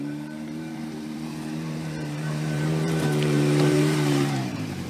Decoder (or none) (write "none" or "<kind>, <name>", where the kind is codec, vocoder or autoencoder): vocoder, BigVGAN v2